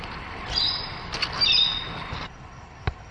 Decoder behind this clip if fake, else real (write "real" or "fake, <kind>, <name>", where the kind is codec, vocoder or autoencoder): real